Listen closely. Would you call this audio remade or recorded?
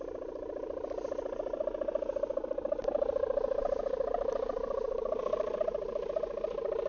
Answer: remade